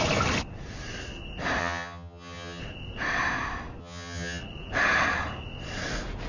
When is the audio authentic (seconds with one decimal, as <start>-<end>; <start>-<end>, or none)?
0.0-1.6; 2.6-3.8; 4.4-6.3